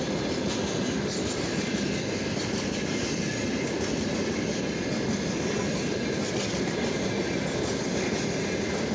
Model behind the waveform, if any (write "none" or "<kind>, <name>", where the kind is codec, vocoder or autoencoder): none